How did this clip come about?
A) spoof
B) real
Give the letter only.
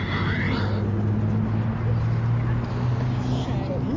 B